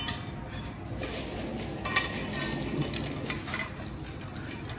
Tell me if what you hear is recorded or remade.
recorded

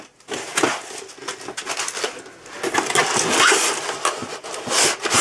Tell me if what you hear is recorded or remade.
recorded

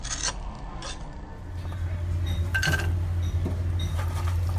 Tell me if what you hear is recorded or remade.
recorded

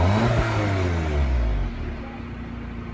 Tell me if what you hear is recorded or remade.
recorded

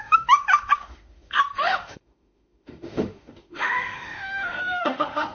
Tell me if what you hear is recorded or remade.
remade